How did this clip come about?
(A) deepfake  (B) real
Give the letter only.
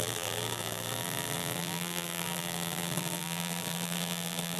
A